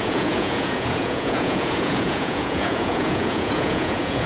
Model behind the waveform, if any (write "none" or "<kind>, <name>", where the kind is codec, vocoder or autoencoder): vocoder, Vocos